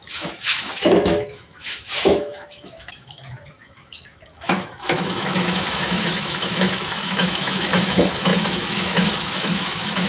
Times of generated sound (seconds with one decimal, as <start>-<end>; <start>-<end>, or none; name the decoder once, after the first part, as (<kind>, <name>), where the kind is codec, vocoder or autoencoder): 0.0-10.1 (autoencoder, DAC-VAE)